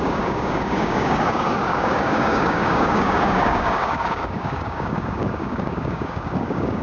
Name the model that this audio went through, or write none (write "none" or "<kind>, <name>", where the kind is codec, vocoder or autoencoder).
codec, DAC